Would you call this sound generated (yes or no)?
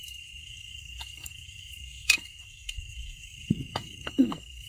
yes